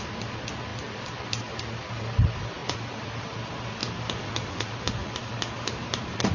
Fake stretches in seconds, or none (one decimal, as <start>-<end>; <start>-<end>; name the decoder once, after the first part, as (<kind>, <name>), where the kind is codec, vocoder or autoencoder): 5.0-6.3 (vocoder, BigVGAN v2)

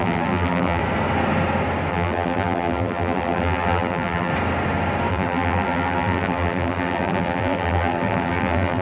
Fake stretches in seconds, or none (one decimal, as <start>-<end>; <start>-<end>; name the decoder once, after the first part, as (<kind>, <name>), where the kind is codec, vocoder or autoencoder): 0.0-0.8 (vocoder, BigVGAN v2); 1.9-4.3; 5.1-8.8

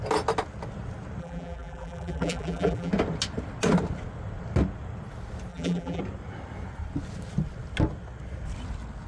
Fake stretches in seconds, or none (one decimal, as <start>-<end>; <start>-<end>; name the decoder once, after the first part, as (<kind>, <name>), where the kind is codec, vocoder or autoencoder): 1.2-2.9 (vocoder, BigVGAN v2); 5.5-6.0

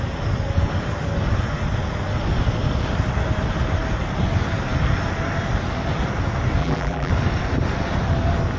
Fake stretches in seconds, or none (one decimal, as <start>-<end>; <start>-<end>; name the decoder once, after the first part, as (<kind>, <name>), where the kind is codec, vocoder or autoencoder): 6.6-7.1 (vocoder, BigVGAN v2)